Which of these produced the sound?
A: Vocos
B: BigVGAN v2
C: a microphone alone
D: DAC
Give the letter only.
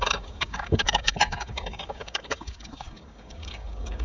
D